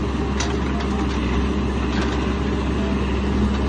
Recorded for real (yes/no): yes